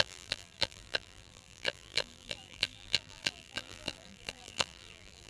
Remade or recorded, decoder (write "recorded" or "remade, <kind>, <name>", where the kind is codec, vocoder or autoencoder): remade, vocoder, BigVGAN v2